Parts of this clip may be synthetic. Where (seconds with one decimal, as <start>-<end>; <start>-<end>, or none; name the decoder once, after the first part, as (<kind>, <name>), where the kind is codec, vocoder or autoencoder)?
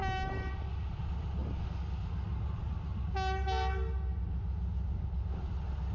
0.9-1.4 (vocoder, BigVGAN v2); 2.0-2.9; 5.5-5.9